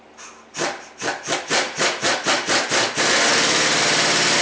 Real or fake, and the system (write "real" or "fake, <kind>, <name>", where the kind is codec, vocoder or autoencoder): real